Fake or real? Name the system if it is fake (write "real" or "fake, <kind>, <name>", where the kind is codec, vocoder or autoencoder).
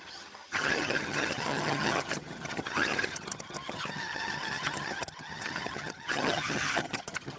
fake, vocoder, HiFi-GAN